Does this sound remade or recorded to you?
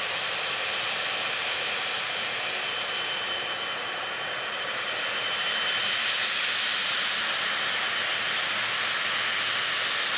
recorded